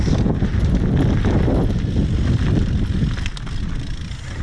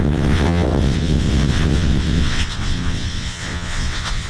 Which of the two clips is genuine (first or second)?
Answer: first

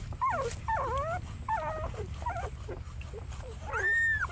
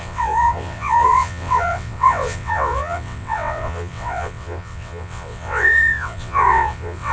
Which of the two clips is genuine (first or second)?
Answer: first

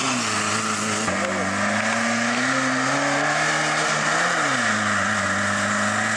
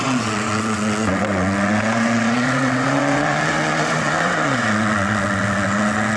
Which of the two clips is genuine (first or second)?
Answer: first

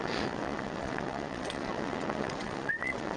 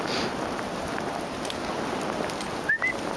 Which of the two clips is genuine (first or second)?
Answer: second